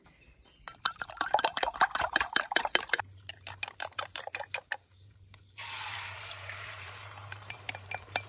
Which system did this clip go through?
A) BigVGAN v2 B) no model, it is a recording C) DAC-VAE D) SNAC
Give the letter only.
A